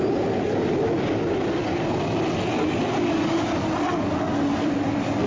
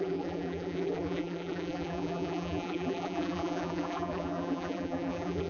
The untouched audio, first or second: first